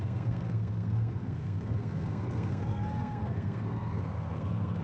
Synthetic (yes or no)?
yes